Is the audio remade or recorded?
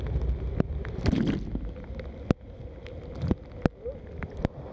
recorded